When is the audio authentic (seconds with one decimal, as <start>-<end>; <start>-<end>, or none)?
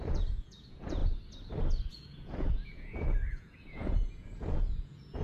1.0-1.8